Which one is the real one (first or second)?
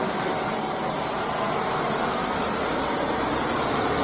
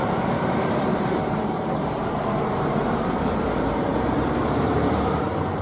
first